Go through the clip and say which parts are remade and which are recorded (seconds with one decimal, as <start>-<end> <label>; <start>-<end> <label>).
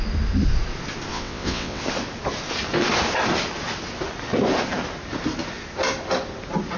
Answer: 0.0-1.1 recorded; 1.1-1.8 remade; 1.8-6.8 recorded